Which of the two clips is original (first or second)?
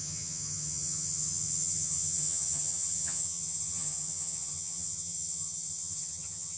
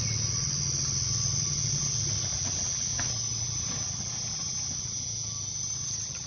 second